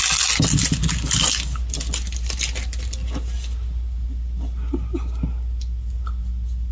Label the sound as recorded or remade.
recorded